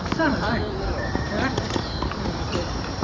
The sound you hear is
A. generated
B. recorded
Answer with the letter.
A